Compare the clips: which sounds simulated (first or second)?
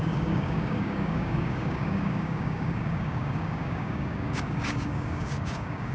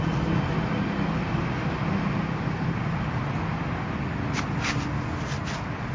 first